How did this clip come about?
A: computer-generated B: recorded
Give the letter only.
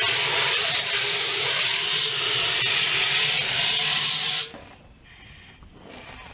B